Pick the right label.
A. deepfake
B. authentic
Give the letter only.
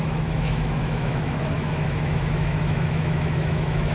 A